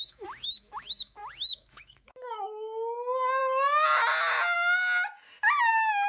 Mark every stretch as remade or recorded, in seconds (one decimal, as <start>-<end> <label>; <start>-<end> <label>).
0.0-3.4 remade; 3.4-5.6 recorded; 5.6-6.1 remade